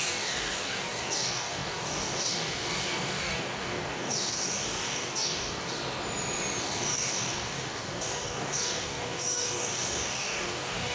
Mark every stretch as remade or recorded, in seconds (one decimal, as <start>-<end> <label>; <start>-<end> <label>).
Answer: 0.0-5.8 remade; 5.8-6.6 recorded; 6.6-10.9 remade